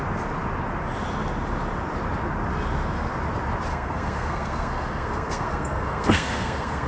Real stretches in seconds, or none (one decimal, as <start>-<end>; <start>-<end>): 0.0-3.7